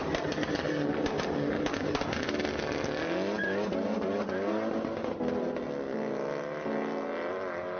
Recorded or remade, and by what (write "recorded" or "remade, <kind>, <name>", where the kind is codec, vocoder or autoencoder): recorded